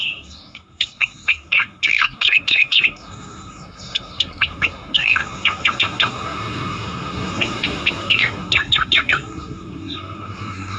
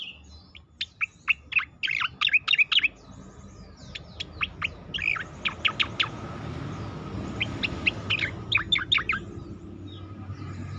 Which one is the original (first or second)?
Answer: second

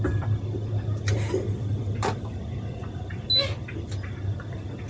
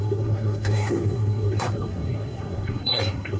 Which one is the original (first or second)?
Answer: first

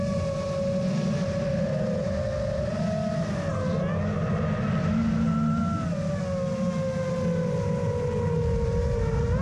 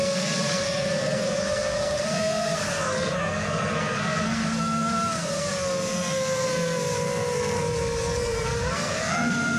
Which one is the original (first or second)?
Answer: first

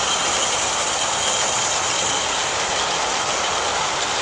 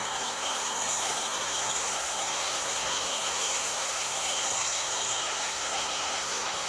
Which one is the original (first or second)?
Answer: first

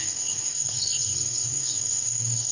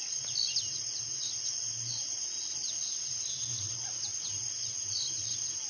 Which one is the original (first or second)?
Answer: second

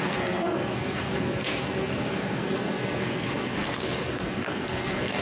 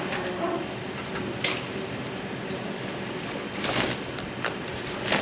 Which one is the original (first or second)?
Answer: second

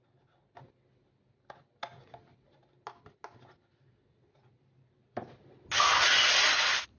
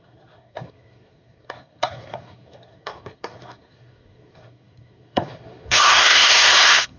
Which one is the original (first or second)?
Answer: first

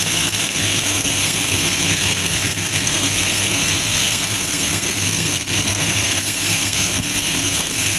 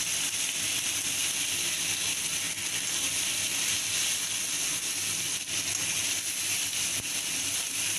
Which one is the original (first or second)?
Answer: second